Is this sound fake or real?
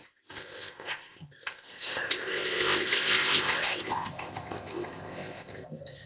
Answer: fake